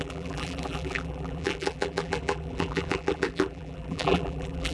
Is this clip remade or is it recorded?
remade